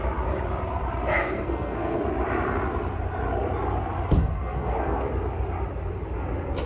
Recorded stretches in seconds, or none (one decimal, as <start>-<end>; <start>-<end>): 0.0-1.2; 2.0-4.2; 5.0-6.7